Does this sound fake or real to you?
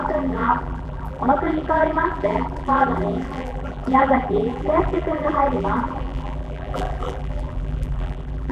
fake